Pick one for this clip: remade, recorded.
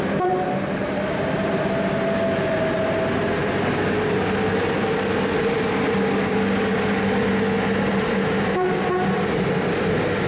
recorded